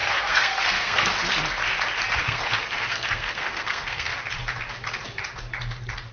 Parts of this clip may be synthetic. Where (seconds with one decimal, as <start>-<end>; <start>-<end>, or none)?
0.0-1.1; 2.2-4.1